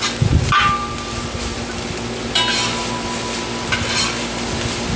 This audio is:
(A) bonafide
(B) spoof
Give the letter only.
A